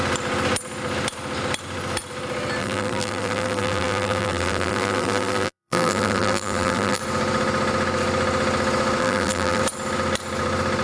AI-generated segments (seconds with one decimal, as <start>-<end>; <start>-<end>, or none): 2.6-7.0; 9.0-9.6